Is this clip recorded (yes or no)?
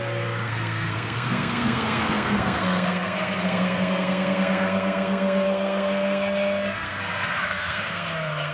no